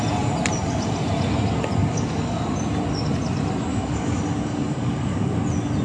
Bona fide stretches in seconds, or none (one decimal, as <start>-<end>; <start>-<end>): 0.0-1.8; 2.3-3.7; 5.3-5.8